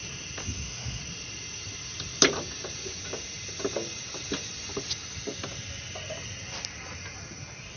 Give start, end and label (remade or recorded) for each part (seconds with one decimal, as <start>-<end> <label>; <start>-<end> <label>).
0.0-0.4 recorded; 0.4-1.0 remade; 1.0-7.8 recorded